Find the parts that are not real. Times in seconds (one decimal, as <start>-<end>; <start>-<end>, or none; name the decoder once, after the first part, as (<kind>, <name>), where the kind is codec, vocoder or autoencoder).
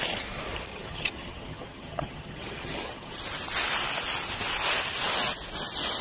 0.7-3.2 (vocoder, HiFi-GAN)